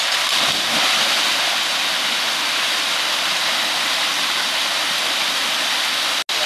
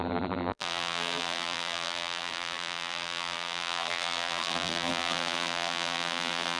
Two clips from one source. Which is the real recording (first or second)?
first